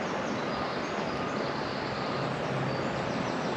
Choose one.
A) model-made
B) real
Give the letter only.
B